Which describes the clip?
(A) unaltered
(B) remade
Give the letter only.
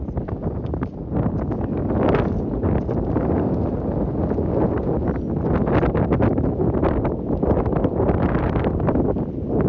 A